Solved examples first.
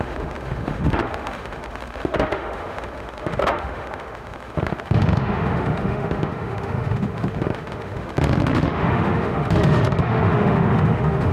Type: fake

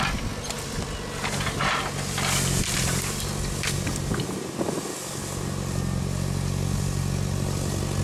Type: real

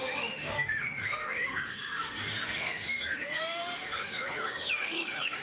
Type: fake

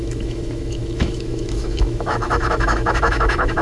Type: fake